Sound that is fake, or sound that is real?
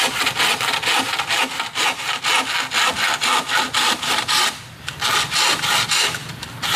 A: real